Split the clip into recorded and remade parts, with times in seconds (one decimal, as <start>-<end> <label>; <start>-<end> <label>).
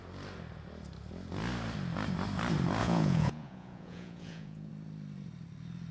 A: 0.0-2.8 recorded; 2.8-4.7 remade; 4.7-5.9 recorded